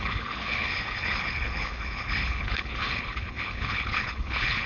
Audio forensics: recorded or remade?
remade